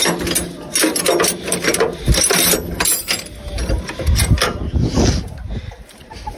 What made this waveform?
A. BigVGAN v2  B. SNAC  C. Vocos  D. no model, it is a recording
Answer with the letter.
D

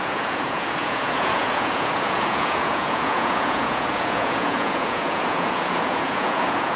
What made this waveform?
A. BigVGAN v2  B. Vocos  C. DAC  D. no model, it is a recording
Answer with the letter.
B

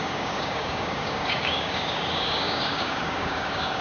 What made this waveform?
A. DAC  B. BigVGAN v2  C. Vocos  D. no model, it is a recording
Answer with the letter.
A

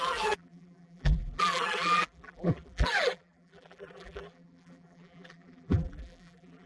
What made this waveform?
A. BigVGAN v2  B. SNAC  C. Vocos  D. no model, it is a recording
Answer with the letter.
A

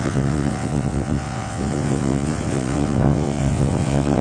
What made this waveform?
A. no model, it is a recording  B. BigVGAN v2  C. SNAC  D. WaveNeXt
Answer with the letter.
D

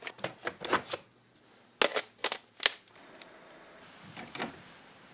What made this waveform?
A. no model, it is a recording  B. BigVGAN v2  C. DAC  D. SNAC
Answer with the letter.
A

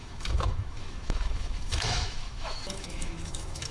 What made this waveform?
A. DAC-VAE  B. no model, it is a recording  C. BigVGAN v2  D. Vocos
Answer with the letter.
A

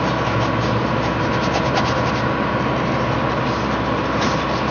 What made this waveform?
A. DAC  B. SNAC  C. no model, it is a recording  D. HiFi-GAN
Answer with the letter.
C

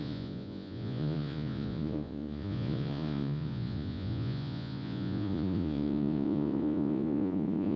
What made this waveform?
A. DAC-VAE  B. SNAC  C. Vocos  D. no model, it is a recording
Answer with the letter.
C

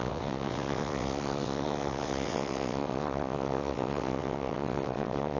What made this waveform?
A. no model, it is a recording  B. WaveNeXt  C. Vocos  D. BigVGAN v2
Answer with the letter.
B